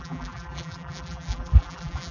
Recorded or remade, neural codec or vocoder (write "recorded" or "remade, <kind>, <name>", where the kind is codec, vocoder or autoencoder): remade, vocoder, BigVGAN v2